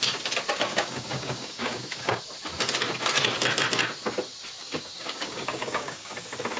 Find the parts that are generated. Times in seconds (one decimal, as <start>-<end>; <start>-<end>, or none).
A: 0.7-2.2; 4.6-6.1